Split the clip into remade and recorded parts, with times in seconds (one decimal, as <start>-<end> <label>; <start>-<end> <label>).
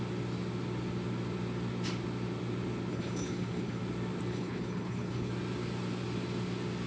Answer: 0.0-2.9 recorded; 2.9-3.8 remade; 3.8-4.3 recorded; 4.3-5.3 remade; 5.3-6.9 recorded